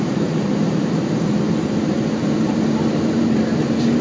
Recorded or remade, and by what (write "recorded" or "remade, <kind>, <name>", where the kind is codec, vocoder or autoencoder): remade, vocoder, BigVGAN v2